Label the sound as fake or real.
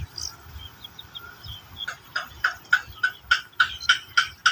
real